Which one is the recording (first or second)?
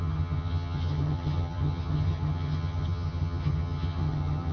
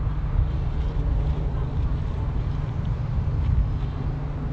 second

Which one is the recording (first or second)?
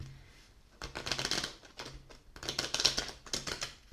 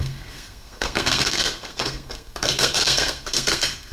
first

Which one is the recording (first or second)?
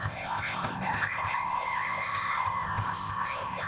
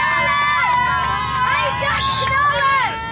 second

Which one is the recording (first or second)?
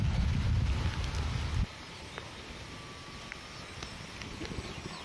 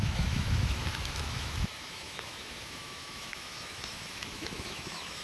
first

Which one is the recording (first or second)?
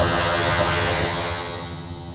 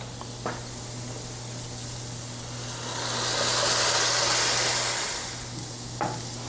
second